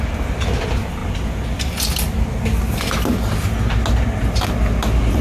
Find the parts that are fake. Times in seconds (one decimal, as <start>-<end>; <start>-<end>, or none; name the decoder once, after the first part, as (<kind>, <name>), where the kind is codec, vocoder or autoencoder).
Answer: none